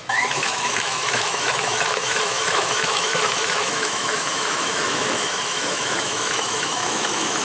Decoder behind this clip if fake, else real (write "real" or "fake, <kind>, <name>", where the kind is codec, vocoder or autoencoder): fake, autoencoder, DAC-VAE